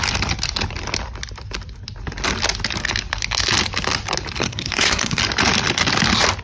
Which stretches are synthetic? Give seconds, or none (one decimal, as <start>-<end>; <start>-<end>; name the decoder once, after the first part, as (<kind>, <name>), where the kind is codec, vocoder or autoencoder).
4.4-5.2 (codec, SNAC)